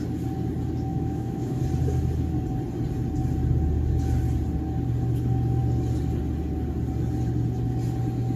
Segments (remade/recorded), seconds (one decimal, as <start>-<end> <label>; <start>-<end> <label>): 0.0-0.9 recorded; 0.9-1.6 remade; 1.6-8.4 recorded